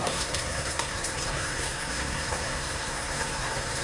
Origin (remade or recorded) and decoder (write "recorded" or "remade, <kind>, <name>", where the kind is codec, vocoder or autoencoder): remade, codec, SNAC